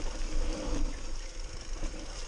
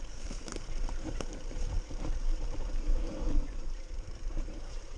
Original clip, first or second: first